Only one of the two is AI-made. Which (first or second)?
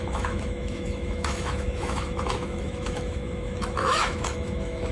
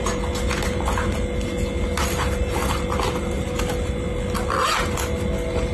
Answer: first